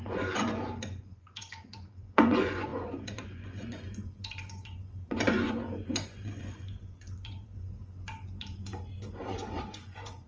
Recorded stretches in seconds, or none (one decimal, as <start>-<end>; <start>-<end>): none